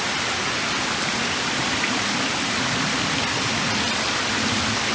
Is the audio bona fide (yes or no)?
yes